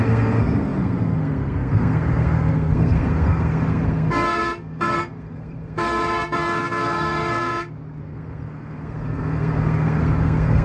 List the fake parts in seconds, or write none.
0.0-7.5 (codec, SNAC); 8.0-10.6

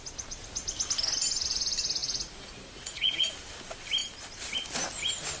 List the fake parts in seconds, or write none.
2.0-3.3 (vocoder, Vocos)